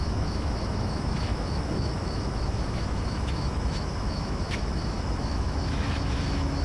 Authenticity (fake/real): fake